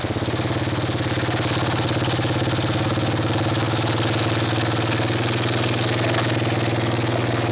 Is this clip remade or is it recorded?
recorded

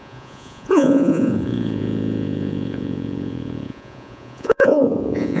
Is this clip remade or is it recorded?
remade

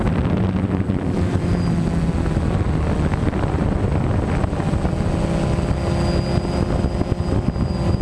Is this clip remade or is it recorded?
recorded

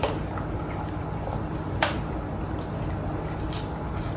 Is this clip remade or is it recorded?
recorded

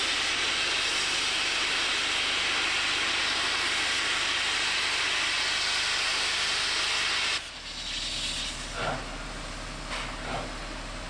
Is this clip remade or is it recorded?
recorded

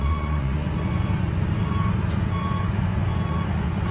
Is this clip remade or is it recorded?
remade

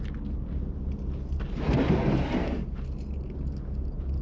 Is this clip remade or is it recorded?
recorded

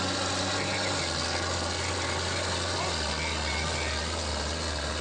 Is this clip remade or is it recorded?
recorded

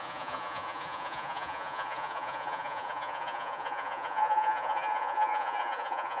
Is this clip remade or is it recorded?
remade